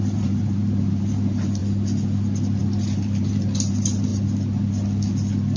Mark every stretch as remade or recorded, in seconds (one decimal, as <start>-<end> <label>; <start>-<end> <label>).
0.0-1.6 remade; 1.6-2.6 recorded; 2.6-4.1 remade; 4.1-5.6 recorded

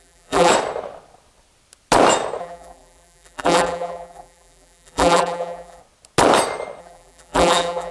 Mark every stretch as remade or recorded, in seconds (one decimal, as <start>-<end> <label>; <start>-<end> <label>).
0.0-0.5 remade; 0.5-2.4 recorded; 2.4-5.8 remade; 5.8-6.8 recorded; 6.8-7.9 remade

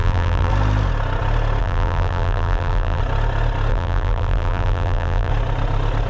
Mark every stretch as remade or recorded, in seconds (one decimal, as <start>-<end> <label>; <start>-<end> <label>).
0.0-0.5 remade; 0.5-1.6 recorded; 1.6-3.0 remade; 3.0-3.7 recorded; 3.7-5.3 remade; 5.3-6.1 recorded

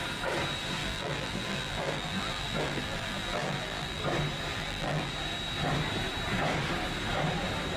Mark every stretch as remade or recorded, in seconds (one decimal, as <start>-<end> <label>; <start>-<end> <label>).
0.0-0.8 recorded; 0.8-4.0 remade; 4.0-4.5 recorded; 4.5-5.1 remade; 5.1-7.8 recorded